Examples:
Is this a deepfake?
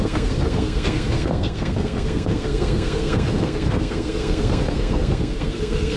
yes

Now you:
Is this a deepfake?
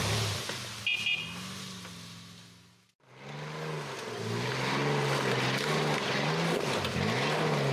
no